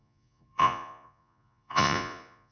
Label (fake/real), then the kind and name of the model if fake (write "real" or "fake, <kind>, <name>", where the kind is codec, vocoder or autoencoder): fake, vocoder, Vocos